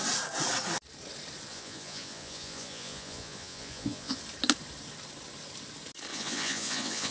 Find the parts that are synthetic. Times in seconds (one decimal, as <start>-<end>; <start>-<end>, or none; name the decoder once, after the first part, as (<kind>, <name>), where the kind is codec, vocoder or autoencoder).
1.5-4.2 (vocoder, Vocos); 6.1-7.1